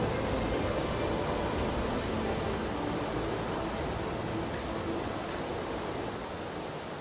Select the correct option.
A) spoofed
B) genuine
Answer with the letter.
B